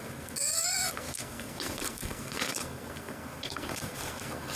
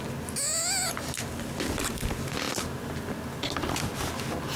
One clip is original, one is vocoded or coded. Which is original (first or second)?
second